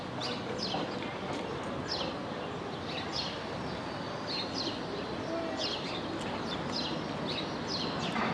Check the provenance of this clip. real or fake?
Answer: real